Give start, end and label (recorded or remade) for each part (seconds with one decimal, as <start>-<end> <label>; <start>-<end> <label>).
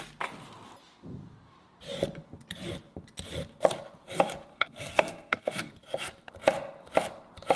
0.0-4.5 recorded; 4.5-5.7 remade; 5.7-7.6 recorded